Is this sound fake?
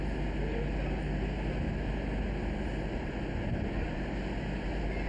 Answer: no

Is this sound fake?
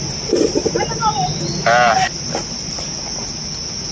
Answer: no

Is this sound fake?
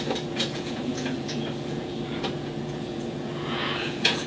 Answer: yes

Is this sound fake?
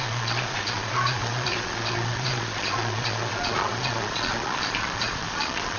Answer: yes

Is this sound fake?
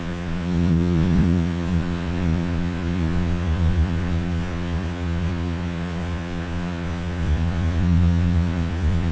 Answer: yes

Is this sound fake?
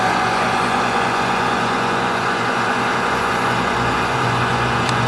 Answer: yes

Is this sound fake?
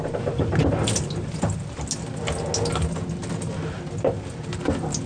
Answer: no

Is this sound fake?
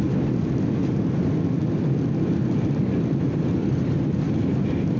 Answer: no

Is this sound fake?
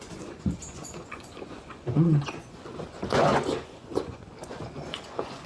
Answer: yes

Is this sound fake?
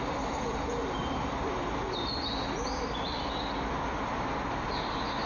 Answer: no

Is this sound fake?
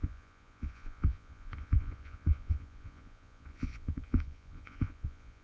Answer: yes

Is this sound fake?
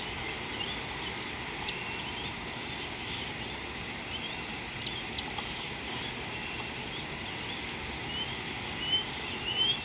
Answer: no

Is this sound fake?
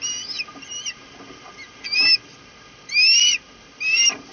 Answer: no